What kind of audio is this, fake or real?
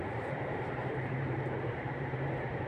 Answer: fake